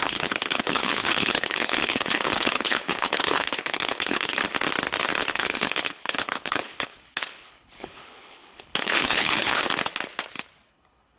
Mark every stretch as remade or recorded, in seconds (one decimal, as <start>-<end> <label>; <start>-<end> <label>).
0.0-4.4 remade; 4.4-5.3 recorded; 5.3-9.6 remade; 9.6-10.7 recorded; 10.7-11.2 remade